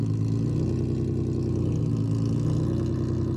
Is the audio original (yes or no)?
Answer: yes